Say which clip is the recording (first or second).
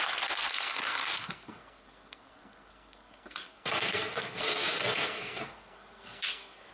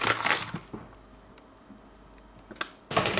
second